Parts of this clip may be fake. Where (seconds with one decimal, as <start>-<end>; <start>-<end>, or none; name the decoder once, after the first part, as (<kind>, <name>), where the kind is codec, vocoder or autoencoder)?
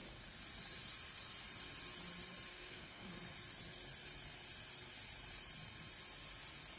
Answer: 2.5-3.1 (codec, SNAC)